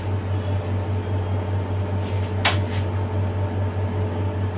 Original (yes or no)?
yes